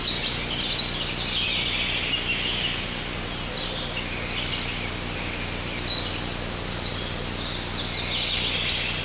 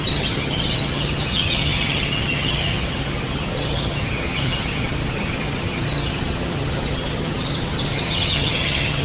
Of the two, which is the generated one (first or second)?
second